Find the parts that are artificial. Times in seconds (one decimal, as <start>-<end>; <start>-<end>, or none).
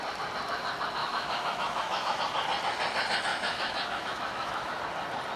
1.0-2.2; 3.3-4.8